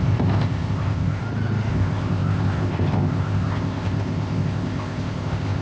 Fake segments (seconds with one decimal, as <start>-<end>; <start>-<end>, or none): 0.0-1.2; 1.7-5.6